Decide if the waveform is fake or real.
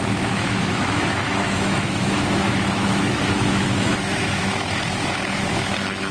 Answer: fake